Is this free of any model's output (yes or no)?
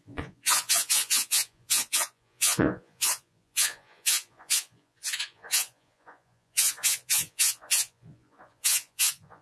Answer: no